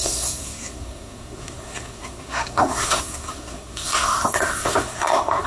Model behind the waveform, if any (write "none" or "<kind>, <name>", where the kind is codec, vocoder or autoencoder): codec, SNAC